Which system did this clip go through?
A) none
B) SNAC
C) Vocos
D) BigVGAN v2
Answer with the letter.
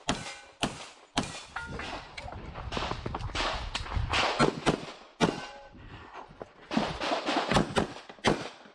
A